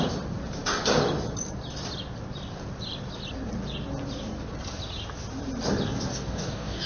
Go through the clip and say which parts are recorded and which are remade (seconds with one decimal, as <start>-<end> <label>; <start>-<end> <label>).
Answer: 0.0-6.1 recorded; 6.1-6.9 remade